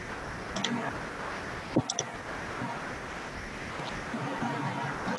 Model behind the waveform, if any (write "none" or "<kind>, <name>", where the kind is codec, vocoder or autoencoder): none